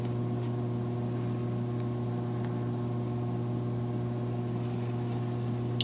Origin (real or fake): real